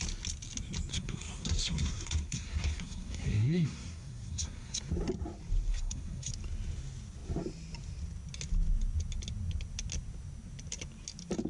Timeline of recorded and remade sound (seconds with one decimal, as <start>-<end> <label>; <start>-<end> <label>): 0.0-0.9 recorded; 0.9-4.8 remade; 4.8-5.7 recorded; 5.7-6.3 remade; 6.3-11.5 recorded